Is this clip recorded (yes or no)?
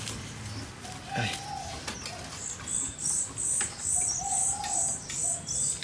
yes